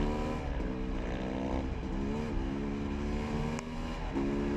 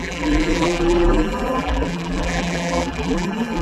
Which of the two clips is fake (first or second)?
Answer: second